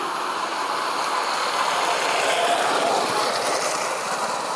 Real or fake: real